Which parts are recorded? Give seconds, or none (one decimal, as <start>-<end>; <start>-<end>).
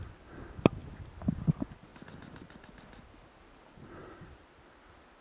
0.0-5.2